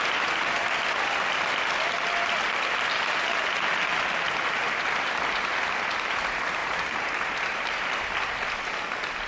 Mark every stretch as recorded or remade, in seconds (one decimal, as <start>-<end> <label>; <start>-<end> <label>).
0.0-6.6 recorded; 6.6-7.7 remade; 7.7-9.3 recorded